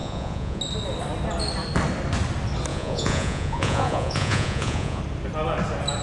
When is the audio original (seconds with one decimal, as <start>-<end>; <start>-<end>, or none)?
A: 0.6-2.7; 5.0-6.0